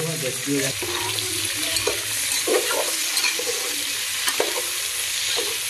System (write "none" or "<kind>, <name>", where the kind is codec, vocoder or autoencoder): none